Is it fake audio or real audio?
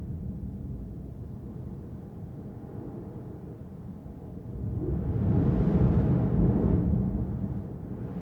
real